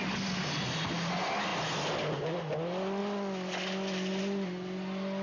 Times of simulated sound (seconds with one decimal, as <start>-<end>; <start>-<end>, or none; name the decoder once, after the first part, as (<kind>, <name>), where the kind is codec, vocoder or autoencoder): none